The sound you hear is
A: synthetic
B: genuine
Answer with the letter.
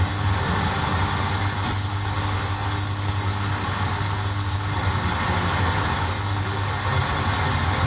B